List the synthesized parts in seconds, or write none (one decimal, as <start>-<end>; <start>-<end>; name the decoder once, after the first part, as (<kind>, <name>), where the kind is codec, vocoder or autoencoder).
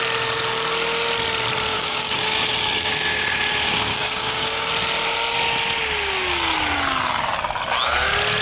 1.7-3.4 (codec, DAC); 3.9-4.7